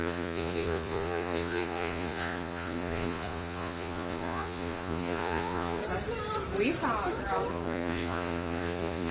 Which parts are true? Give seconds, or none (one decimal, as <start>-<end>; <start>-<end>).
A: 5.8-7.5